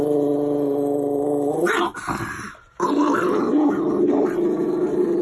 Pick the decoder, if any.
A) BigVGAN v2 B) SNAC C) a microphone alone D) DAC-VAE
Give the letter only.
C